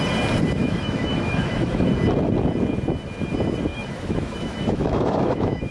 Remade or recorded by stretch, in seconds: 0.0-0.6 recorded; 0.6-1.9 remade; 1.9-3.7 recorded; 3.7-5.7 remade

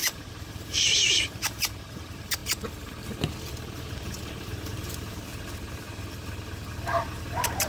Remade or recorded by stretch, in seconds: 0.0-2.4 remade; 2.4-3.8 recorded; 3.8-5.3 remade; 5.3-7.2 recorded; 7.2-7.7 remade

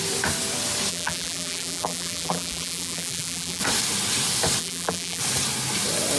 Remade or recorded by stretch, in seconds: 0.0-0.9 recorded; 0.9-3.6 remade; 3.6-4.6 recorded; 4.6-5.2 remade; 5.2-6.2 recorded

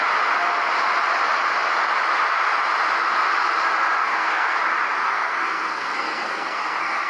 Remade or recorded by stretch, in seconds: 0.0-4.0 recorded; 4.0-4.6 remade; 4.6-5.0 recorded; 5.0-7.1 remade

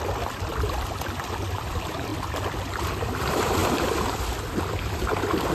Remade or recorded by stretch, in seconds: 0.0-2.1 remade; 2.1-3.0 recorded; 3.0-3.6 remade; 3.6-5.5 recorded

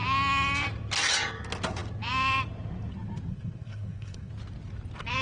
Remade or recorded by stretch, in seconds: 0.0-3.3 recorded; 3.3-4.3 remade; 4.3-5.2 recorded

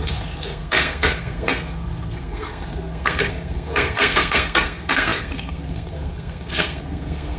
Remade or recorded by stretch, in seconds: 0.0-7.4 remade

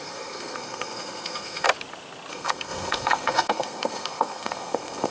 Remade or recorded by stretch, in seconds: 0.0-1.7 remade; 1.7-2.3 recorded; 2.3-5.1 remade